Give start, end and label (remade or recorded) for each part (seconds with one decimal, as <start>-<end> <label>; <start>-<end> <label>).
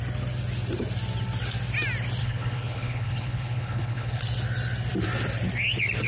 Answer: 0.0-2.2 recorded; 2.2-4.2 remade; 4.2-6.1 recorded